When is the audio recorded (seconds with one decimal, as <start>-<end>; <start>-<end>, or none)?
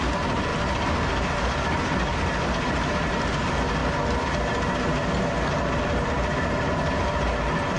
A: 0.0-7.8